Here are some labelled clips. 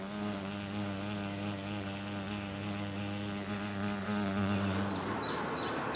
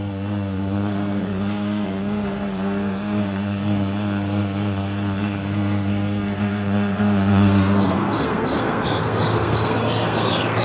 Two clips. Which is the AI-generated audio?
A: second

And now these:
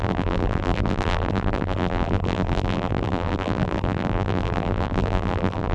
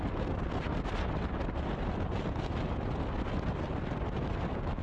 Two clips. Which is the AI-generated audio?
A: first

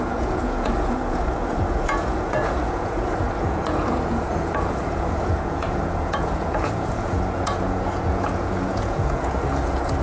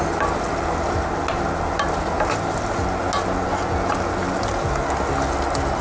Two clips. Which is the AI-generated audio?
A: first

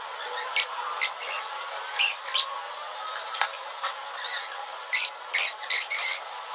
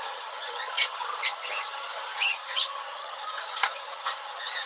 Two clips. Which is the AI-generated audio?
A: second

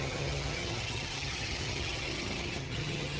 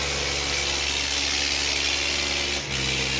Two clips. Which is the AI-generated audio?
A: first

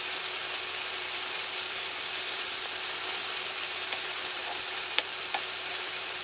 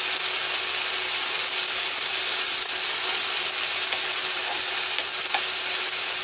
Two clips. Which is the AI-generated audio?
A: first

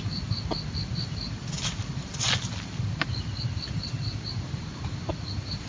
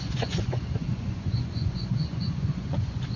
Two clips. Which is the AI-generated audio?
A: second